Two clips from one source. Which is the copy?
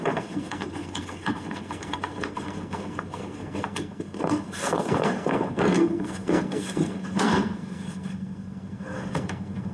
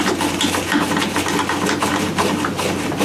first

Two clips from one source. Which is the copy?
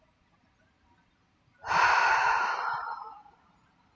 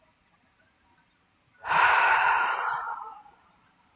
second